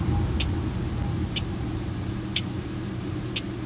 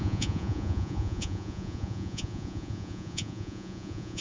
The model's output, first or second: second